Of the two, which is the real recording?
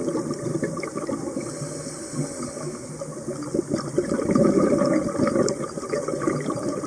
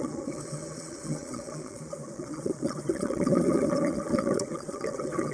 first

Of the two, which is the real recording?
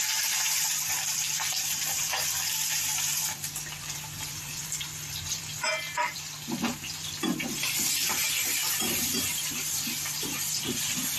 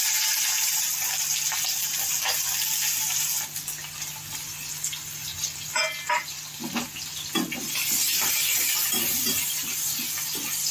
second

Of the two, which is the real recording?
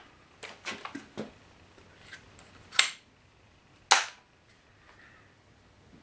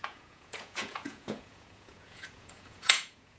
first